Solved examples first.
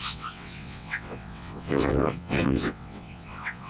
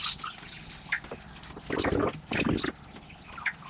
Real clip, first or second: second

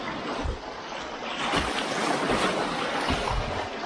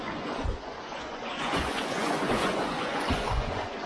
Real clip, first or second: first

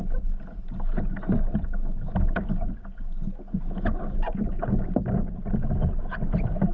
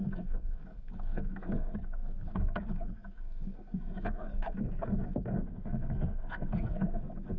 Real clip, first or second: first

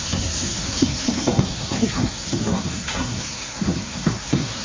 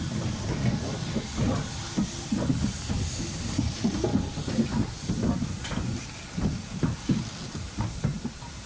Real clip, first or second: second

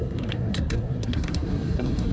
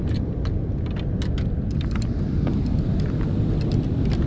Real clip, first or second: second